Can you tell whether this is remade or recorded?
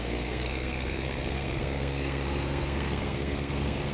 remade